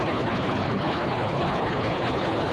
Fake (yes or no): yes